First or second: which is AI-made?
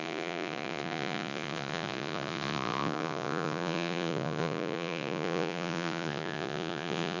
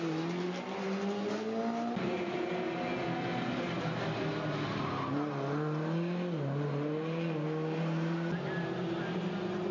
first